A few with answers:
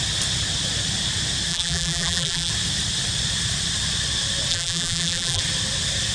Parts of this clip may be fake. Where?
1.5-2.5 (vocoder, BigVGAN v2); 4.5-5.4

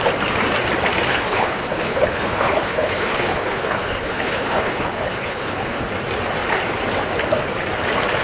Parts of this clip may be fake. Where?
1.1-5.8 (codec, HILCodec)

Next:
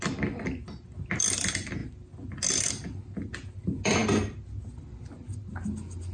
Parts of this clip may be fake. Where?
none

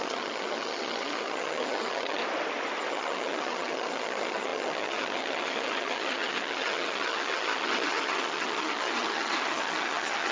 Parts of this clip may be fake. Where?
0.0-2.2 (vocoder, HiFi-GAN); 2.9-10.3

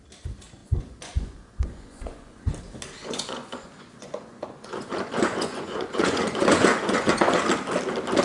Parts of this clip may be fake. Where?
0.6-2.5 (vocoder, Vocos); 3.0-7.4